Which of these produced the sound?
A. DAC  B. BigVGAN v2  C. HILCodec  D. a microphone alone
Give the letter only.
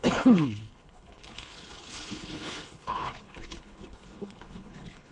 C